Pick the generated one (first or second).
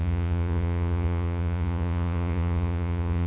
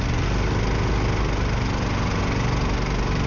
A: first